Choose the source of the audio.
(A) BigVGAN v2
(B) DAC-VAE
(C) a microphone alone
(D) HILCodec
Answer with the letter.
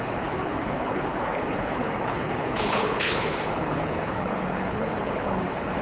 D